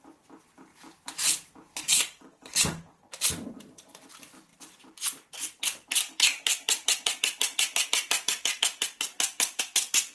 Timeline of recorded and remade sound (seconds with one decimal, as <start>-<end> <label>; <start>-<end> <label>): 0.0-0.7 recorded; 0.7-3.0 remade; 3.0-10.1 recorded